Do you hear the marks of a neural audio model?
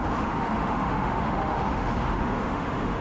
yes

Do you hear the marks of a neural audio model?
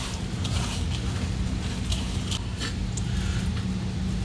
no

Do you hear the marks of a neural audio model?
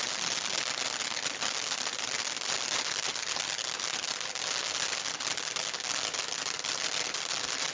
no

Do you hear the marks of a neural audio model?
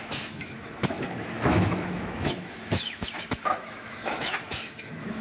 yes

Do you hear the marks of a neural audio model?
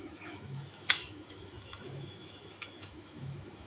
yes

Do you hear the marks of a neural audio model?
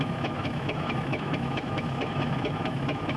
yes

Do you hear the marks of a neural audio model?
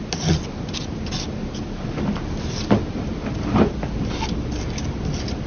no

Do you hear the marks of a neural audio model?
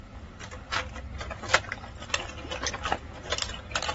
no